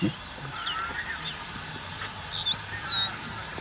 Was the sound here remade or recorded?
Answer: recorded